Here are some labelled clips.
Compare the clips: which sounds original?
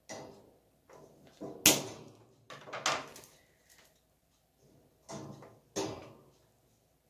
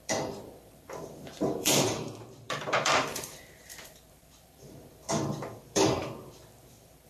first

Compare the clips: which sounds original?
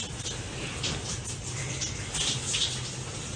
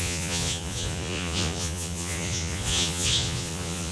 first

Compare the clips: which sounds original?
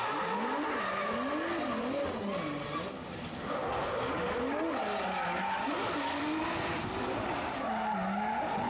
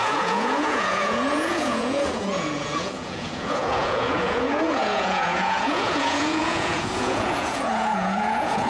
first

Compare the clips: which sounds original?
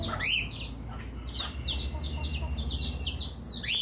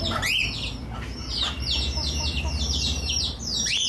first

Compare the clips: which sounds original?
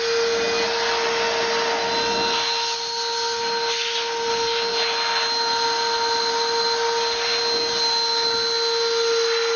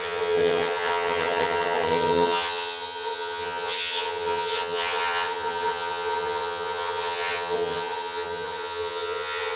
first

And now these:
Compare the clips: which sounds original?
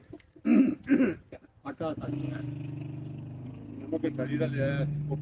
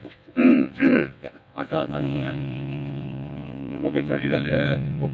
first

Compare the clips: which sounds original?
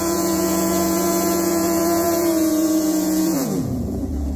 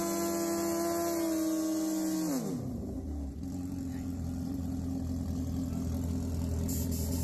second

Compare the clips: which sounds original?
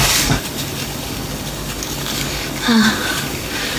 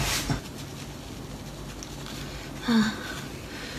second